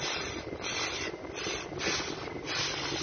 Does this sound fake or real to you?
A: real